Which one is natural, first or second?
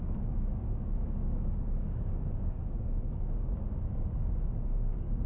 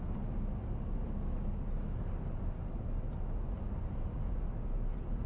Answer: second